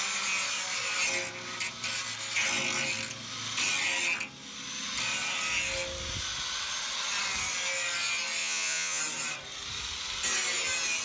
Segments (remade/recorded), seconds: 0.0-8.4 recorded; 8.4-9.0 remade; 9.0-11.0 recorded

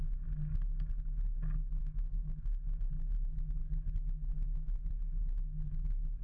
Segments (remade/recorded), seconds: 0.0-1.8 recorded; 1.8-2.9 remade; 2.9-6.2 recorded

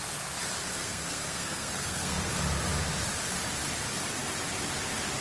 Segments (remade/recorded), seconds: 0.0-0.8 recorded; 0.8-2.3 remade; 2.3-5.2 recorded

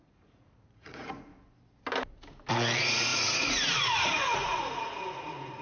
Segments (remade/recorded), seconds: 0.0-1.3 remade; 1.3-2.5 recorded; 2.5-5.6 remade

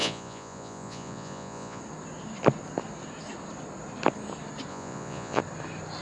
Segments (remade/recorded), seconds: 0.0-1.8 remade; 1.8-4.7 recorded; 4.7-5.4 remade; 5.4-6.0 recorded

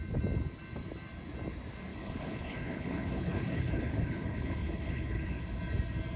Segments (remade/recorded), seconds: 0.0-1.9 recorded; 1.9-5.6 remade; 5.6-6.2 recorded

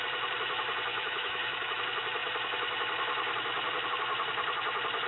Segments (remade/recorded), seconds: 0.0-0.9 recorded; 0.9-1.8 remade; 1.8-5.1 recorded